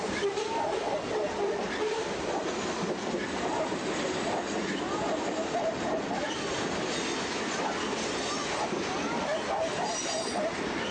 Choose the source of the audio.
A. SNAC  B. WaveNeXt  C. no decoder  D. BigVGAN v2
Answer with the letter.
C